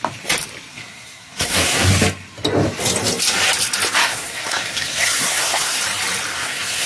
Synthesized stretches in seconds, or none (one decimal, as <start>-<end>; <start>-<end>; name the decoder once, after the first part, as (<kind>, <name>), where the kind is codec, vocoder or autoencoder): 0.7-1.9 (codec, SNAC); 4.0-5.8; 6.3-6.9